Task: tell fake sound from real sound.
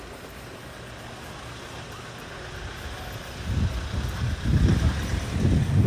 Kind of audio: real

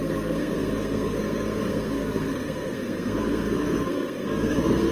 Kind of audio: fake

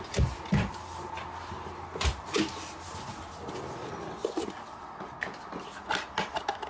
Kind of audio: real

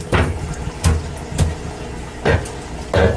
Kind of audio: real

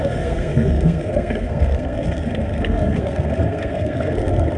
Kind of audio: fake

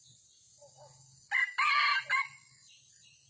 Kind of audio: real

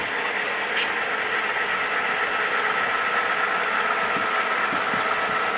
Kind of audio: real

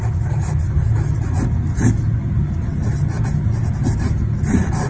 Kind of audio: real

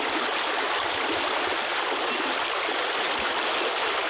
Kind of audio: real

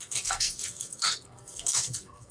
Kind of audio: fake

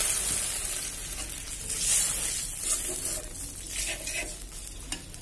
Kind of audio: real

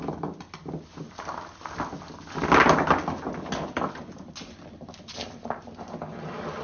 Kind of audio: real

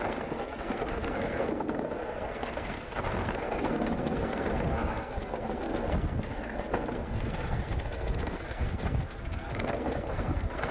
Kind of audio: fake